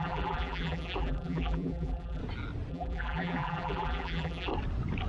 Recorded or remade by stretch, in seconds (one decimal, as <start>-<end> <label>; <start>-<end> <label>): 0.0-2.2 remade; 2.2-2.7 recorded; 2.7-4.5 remade; 4.5-5.1 recorded